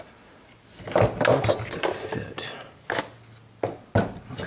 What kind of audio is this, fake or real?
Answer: real